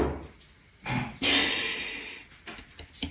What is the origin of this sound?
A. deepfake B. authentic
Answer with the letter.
B